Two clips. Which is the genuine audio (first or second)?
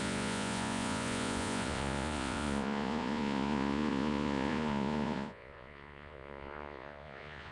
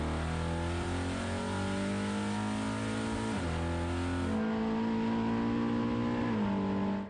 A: second